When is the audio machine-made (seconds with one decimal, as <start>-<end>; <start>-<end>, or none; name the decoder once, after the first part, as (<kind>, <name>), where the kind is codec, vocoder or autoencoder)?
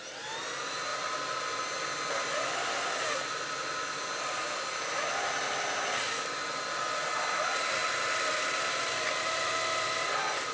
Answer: none